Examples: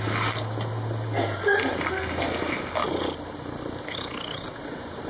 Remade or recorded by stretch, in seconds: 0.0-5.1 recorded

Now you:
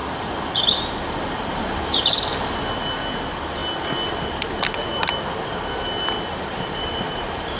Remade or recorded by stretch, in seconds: 0.0-1.5 recorded; 1.5-2.2 remade; 2.2-6.3 recorded; 6.3-7.6 remade

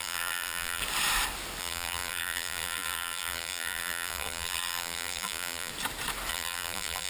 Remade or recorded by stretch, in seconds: 0.0-0.8 remade; 0.8-1.6 recorded; 1.6-5.7 remade; 5.7-6.3 recorded; 6.3-7.1 remade

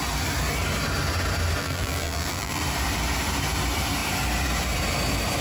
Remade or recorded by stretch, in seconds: 0.0-1.6 recorded; 1.6-2.6 remade; 2.6-5.4 recorded